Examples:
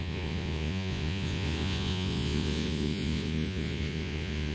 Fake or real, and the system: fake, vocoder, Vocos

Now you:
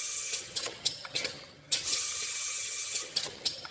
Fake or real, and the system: fake, vocoder, HiFi-GAN